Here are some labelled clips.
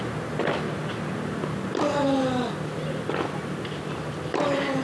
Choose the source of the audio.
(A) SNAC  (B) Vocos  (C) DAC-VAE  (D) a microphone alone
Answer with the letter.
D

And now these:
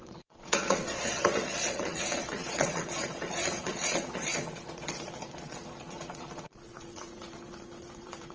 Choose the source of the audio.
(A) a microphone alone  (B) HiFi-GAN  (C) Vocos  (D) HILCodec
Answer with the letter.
C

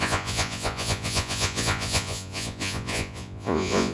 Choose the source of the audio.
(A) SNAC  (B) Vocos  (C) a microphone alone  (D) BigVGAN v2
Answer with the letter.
B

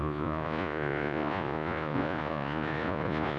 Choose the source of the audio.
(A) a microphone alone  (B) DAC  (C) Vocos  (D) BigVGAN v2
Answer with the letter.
C